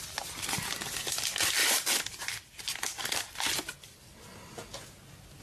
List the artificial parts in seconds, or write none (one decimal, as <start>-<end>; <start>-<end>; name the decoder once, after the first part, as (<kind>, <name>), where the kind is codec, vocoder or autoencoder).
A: 1.6-4.8 (vocoder, BigVGAN v2)